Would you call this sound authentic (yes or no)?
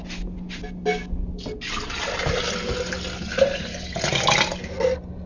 yes